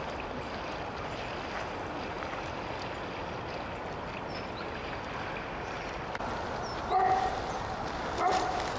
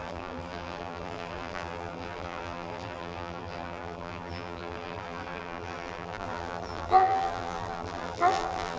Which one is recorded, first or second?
first